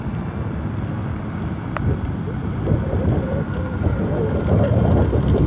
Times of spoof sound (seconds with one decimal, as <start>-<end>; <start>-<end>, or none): none